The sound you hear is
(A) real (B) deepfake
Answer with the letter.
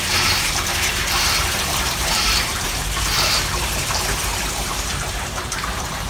B